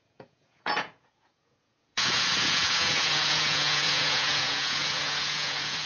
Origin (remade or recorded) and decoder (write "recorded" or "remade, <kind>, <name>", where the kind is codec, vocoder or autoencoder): remade, vocoder, Vocos